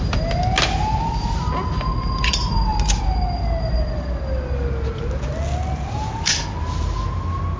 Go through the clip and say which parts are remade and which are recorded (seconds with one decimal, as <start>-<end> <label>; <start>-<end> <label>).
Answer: 0.0-7.6 recorded